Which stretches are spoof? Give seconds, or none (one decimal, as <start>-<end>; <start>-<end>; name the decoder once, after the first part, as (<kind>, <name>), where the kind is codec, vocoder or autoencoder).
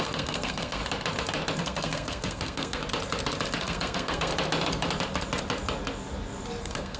0.0-0.8 (codec, SNAC); 1.6-2.8; 3.6-4.3; 6.6-7.0